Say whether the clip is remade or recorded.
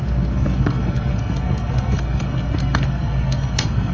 remade